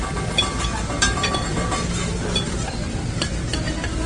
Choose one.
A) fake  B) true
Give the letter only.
B